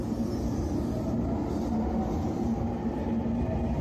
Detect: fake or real real